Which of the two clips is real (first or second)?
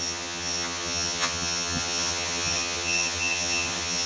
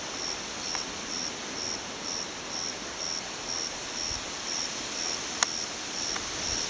second